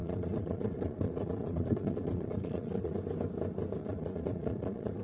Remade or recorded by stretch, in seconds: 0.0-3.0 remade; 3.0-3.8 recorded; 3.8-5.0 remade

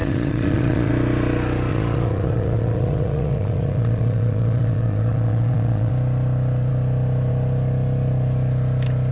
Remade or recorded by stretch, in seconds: 0.0-0.9 remade; 0.9-1.7 recorded; 1.7-5.9 remade; 5.9-9.1 recorded

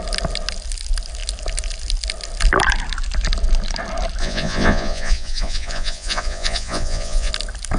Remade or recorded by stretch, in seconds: 0.0-4.2 recorded; 4.2-7.3 remade; 7.3-7.8 recorded

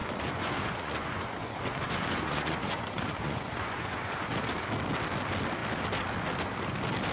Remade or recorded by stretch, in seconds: 0.0-4.3 remade; 4.3-7.1 recorded

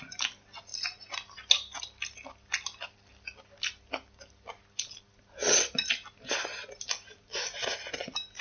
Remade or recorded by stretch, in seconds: 0.0-7.3 recorded; 7.3-7.9 remade; 7.9-8.4 recorded

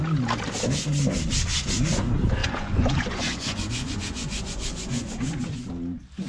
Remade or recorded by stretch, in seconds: 0.0-2.4 recorded; 2.4-5.7 remade; 5.7-6.3 recorded

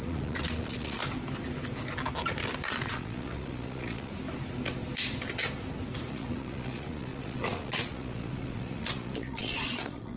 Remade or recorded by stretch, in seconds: 0.0-1.0 remade; 1.0-2.7 recorded; 2.7-4.1 remade; 4.1-6.1 recorded; 6.1-10.2 remade

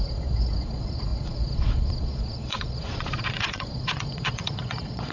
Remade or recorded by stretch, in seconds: 0.0-5.1 remade